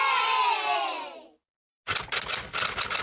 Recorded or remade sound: recorded